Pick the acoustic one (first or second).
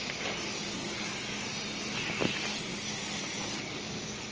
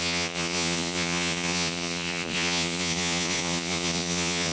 first